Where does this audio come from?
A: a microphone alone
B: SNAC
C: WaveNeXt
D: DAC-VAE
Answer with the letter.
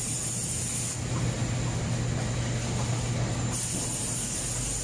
A